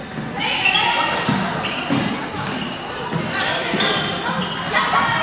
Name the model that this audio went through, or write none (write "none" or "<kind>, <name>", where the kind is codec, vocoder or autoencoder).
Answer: none